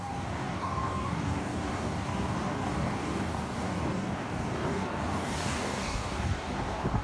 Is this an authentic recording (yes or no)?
no